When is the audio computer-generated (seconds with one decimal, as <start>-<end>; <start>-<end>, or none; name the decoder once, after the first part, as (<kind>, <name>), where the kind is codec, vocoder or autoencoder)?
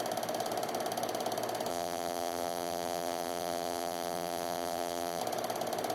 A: 1.7-5.2 (vocoder, BigVGAN v2)